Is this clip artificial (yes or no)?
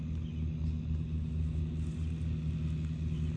no